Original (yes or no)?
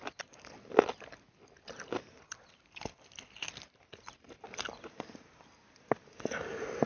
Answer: yes